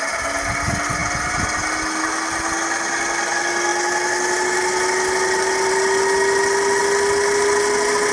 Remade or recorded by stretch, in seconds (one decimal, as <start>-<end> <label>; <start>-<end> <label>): 0.0-8.1 recorded